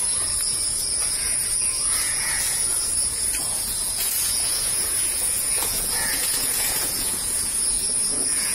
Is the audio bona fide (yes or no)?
no